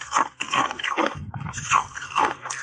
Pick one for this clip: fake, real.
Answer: fake